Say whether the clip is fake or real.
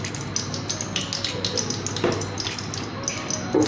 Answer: real